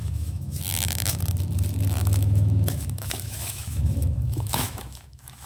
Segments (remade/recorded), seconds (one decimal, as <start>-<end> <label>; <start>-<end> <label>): 0.0-1.2 remade; 1.2-2.0 recorded; 2.0-5.5 remade